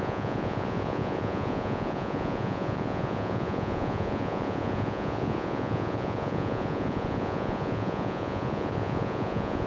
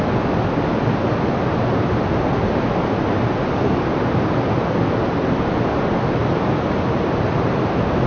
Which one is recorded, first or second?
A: second